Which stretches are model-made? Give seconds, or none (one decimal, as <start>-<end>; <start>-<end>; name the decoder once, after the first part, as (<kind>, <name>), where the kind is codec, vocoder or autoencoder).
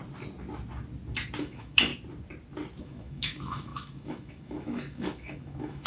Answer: 1.4-1.9 (autoencoder, DAC-VAE); 2.8-5.9